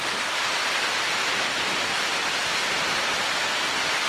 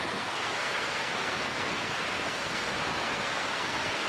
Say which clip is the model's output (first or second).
second